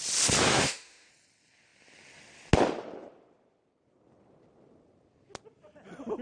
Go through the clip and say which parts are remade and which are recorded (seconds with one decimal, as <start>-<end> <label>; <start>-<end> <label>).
0.0-0.5 recorded; 0.5-1.1 remade; 1.1-6.2 recorded